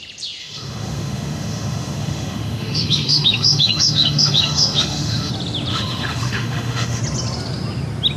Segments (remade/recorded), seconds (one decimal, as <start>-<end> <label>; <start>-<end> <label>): 0.0-0.4 recorded; 0.4-5.3 remade; 5.3-5.7 recorded; 5.7-7.0 remade; 7.0-8.2 recorded